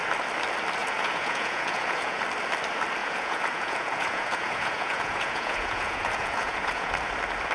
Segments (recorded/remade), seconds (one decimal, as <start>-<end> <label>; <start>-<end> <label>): 0.0-0.8 recorded; 0.8-2.2 remade; 2.2-3.0 recorded; 3.0-6.9 remade; 6.9-7.5 recorded